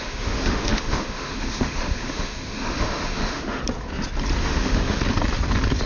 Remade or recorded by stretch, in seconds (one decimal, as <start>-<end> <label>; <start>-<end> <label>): 0.0-3.6 remade; 3.6-4.4 recorded; 4.4-5.0 remade; 5.0-5.9 recorded